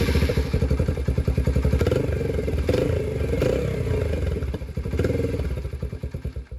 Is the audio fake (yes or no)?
yes